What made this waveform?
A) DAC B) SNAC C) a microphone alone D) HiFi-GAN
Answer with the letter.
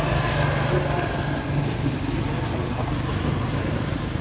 C